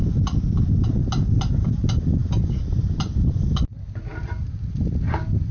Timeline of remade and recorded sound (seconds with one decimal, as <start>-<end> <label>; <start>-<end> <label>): 0.0-2.2 recorded; 2.2-3.6 remade; 3.6-4.1 recorded; 4.1-4.9 remade; 4.9-5.5 recorded

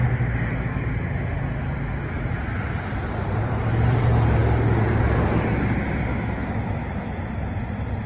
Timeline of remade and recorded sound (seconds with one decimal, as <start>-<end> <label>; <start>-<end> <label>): 0.0-6.1 recorded; 6.1-7.1 remade; 7.1-8.1 recorded

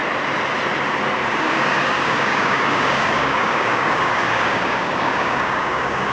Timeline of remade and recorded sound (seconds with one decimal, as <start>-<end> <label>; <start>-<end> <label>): 0.0-1.3 recorded; 1.3-6.1 remade

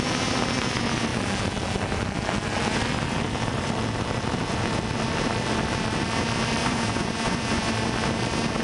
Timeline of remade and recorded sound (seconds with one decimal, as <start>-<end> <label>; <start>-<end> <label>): 0.0-6.6 recorded; 6.6-7.7 remade; 7.7-8.6 recorded